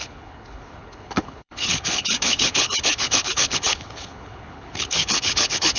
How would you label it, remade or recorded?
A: remade